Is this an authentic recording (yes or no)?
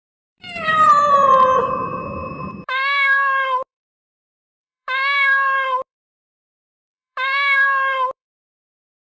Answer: no